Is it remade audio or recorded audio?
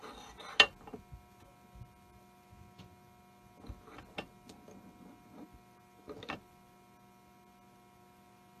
recorded